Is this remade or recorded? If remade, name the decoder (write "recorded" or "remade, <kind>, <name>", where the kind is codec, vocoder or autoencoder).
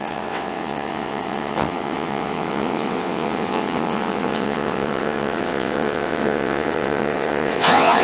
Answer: remade, vocoder, WaveNeXt